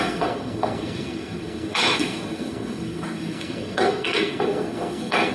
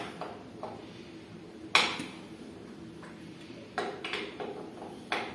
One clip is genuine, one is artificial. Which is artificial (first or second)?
first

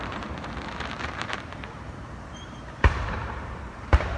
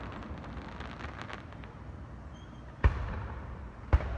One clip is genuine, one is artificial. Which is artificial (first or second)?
first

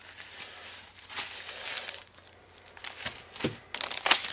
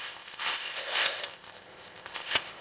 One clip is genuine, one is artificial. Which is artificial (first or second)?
second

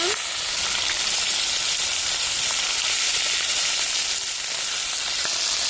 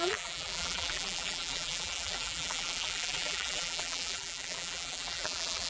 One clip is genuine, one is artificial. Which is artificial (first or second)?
second